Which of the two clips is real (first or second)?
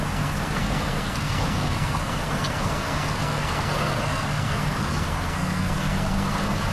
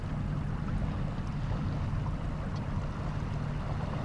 second